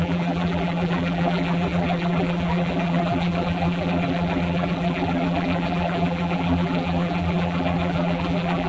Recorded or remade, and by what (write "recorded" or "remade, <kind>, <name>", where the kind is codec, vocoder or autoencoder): remade, vocoder, BigVGAN v2